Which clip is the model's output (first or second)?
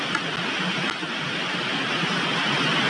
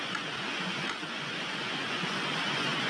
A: second